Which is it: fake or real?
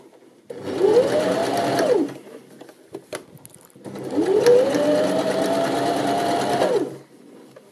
real